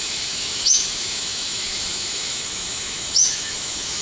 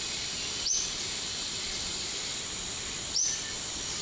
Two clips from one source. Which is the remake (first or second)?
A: first